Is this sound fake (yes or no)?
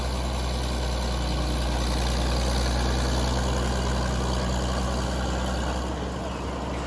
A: no